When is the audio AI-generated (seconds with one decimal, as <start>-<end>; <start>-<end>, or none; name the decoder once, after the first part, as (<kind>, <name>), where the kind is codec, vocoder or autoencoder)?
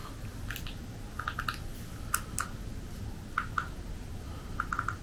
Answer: none